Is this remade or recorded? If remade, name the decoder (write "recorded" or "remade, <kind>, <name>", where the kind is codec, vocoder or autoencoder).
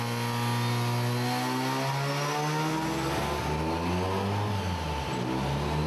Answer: recorded